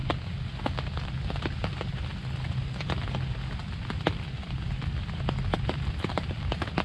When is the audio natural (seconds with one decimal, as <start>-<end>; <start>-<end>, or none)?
0.0-1.3; 2.1-6.1